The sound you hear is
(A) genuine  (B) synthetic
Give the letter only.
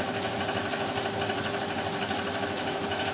A